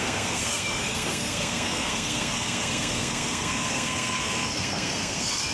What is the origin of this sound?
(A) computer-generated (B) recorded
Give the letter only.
A